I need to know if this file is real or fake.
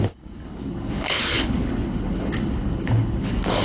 fake